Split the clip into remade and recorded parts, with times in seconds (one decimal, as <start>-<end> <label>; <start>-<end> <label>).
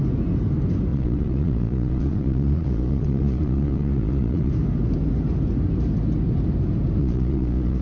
0.0-0.9 recorded; 0.9-4.5 remade; 4.5-7.0 recorded; 7.0-7.8 remade